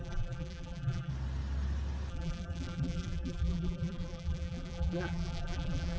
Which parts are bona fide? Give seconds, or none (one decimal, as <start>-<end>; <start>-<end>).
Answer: 1.1-2.1